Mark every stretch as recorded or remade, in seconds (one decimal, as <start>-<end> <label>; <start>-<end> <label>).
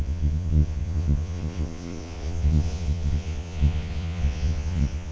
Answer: 0.0-5.1 remade